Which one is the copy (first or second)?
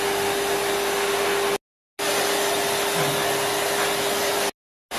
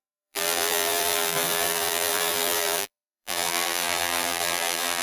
second